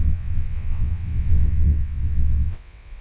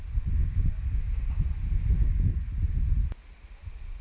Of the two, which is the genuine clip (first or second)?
second